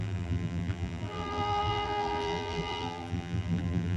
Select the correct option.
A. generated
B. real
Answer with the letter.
A